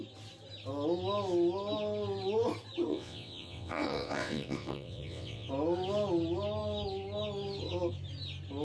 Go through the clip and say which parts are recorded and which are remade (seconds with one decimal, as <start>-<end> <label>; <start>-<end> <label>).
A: 0.0-2.9 recorded; 2.9-5.5 remade; 5.5-8.6 recorded